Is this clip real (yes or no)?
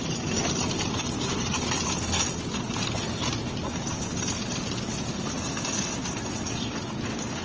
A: yes